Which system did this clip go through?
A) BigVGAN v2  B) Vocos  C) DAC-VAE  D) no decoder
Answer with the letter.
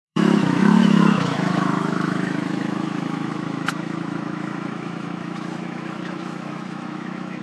C